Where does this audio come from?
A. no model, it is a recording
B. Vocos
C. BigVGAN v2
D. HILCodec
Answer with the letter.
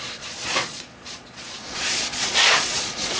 B